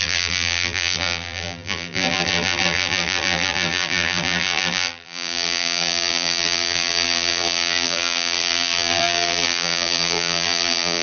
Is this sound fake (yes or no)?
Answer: yes